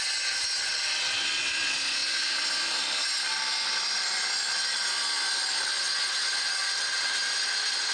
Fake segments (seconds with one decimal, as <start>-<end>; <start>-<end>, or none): none